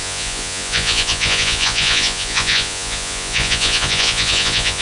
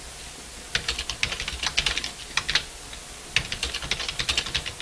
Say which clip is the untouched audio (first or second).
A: second